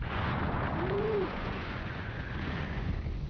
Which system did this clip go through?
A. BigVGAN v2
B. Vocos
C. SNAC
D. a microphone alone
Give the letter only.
B